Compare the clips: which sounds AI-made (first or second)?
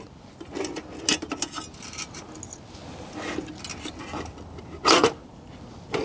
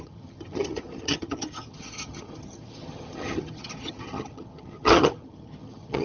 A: second